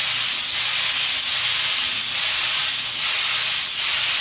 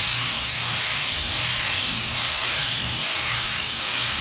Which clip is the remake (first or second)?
second